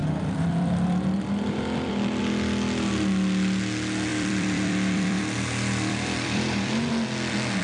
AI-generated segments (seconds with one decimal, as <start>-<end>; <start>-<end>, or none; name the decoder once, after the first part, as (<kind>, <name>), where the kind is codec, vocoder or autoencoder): 0.0-2.2 (vocoder, BigVGAN v2); 4.1-6.9